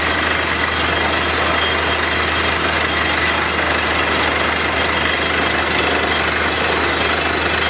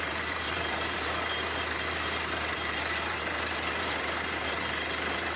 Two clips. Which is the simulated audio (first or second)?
second